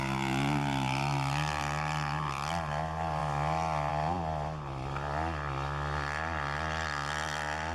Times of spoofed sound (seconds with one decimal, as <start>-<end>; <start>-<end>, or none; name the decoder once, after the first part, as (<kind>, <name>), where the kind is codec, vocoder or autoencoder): none